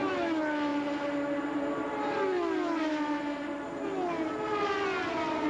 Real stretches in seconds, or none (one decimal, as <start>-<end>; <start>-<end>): 0.0-5.5